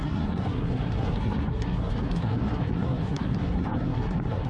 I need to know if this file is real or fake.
fake